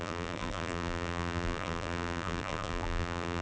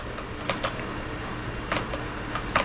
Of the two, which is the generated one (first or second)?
first